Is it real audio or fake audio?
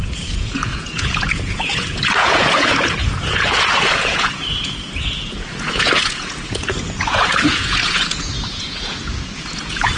fake